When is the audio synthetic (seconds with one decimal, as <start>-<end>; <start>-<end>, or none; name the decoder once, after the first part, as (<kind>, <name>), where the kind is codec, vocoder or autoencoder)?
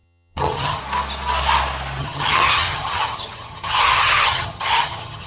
0.0-0.8 (vocoder, HiFi-GAN); 2.0-5.3